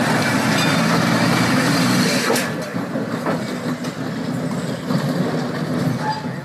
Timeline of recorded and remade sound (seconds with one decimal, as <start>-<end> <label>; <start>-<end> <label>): 0.0-6.4 recorded